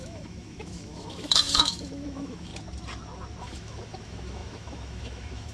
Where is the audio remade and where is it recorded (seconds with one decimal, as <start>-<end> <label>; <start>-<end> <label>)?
0.0-2.5 remade; 2.5-3.4 recorded; 3.4-5.5 remade